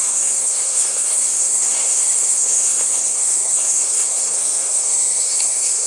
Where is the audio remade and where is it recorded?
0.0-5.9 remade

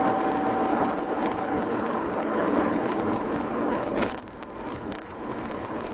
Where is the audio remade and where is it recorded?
0.0-0.7 recorded; 0.7-4.2 remade; 4.2-4.7 recorded; 4.7-5.9 remade

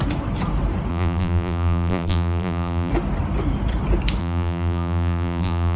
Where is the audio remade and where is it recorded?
0.0-0.9 recorded; 0.9-2.9 remade; 2.9-4.2 recorded; 4.2-5.8 remade

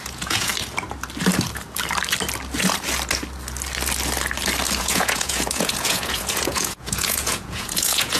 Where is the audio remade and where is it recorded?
0.0-0.5 remade; 0.5-4.8 recorded; 4.8-8.2 remade